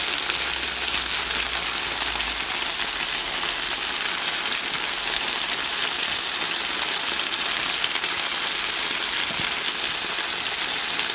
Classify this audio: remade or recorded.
recorded